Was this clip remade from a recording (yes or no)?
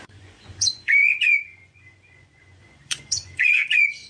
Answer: yes